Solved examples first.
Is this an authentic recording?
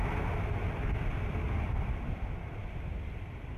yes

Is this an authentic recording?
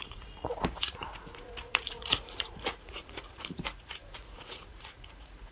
no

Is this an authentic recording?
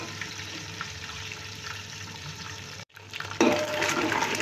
no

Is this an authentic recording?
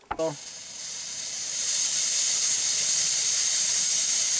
yes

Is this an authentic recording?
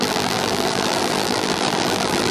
no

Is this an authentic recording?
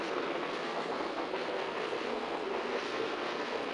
no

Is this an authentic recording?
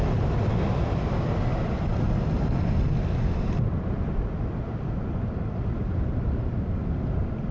yes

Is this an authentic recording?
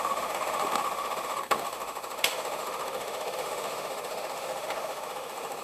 no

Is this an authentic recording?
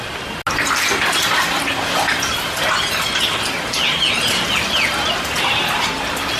yes